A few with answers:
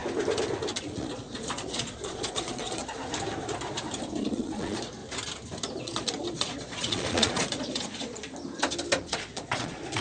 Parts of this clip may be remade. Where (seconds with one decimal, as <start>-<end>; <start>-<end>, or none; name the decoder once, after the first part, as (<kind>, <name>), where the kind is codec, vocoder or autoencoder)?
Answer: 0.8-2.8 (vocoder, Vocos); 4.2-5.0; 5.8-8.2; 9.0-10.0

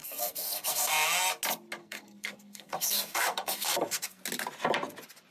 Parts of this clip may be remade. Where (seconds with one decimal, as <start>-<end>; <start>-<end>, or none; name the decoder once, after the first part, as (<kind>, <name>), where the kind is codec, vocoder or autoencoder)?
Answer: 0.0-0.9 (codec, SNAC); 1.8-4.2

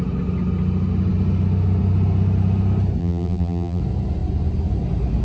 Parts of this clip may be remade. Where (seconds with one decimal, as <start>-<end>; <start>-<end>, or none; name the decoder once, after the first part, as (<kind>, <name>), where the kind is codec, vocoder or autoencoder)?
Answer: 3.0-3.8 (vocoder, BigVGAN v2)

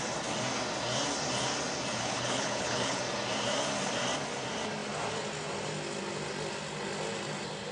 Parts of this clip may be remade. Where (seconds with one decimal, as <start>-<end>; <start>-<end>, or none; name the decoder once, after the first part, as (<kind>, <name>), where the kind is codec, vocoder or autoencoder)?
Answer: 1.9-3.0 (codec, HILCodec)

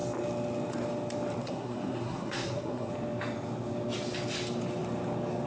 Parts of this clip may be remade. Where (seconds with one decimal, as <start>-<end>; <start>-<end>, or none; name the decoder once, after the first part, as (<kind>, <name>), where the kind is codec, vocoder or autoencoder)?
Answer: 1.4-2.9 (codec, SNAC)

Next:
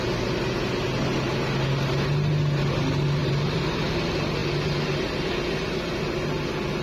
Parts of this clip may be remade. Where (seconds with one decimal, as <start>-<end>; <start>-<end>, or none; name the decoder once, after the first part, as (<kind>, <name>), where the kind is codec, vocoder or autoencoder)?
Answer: 3.2-3.9 (vocoder, BigVGAN v2)

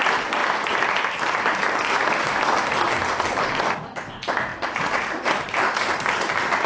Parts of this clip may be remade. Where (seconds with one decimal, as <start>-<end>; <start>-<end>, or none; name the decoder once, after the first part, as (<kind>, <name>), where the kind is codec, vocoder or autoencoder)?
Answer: none

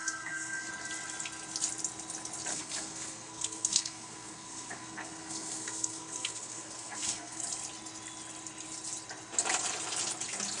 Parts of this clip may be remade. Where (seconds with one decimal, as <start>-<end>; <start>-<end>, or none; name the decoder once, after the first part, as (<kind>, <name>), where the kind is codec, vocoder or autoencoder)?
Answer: 0.0-0.7 (codec, SNAC); 2.5-7.4